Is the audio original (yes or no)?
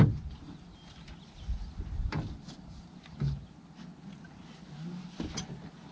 yes